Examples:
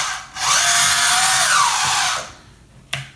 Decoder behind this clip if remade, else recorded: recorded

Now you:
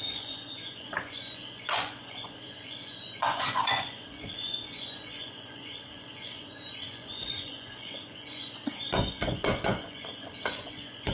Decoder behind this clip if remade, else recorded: remade, vocoder, Vocos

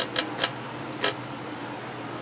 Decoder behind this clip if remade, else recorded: recorded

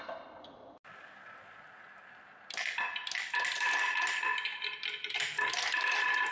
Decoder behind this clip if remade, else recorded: recorded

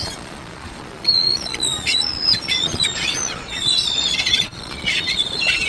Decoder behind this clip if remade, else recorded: remade, vocoder, Vocos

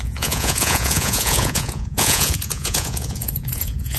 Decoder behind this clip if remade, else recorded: remade, vocoder, Vocos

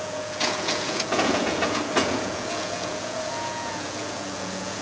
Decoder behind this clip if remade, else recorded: remade, vocoder, Vocos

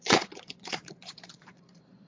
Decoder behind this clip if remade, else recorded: remade, vocoder, Vocos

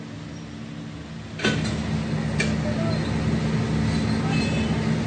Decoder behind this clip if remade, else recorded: recorded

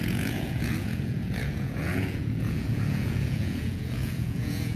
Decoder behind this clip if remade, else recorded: remade, vocoder, Vocos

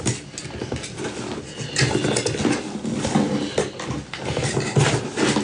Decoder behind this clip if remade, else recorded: recorded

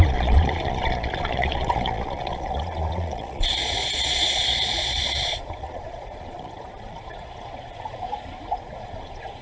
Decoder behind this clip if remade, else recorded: remade, vocoder, Vocos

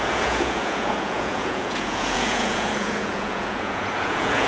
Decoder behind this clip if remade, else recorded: remade, vocoder, Vocos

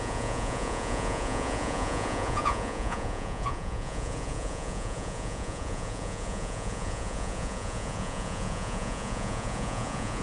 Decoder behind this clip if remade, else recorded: remade, vocoder, Vocos